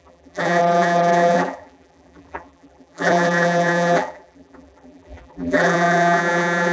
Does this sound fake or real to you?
fake